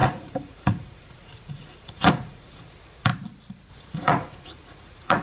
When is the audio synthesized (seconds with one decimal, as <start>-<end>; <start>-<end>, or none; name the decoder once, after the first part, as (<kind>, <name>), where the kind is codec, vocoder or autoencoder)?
0.0-3.1 (vocoder, Vocos); 3.7-5.2